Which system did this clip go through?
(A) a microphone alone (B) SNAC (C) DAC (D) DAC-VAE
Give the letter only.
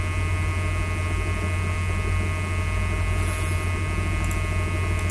A